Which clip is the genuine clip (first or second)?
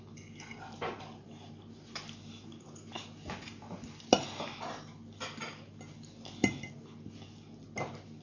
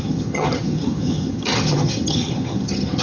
first